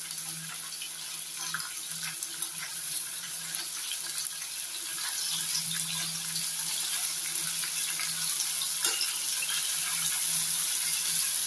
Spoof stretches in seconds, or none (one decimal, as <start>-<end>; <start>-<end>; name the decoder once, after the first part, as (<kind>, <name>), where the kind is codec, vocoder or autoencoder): 2.6-3.4 (vocoder, Vocos)